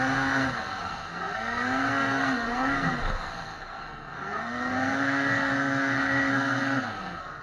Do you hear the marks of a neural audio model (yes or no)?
yes